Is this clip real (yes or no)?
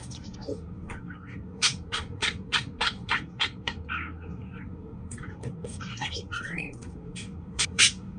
no